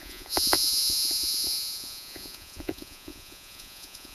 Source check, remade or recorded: remade